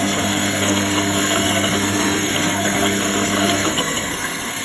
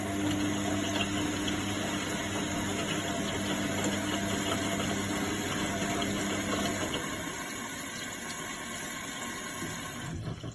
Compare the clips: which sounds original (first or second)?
second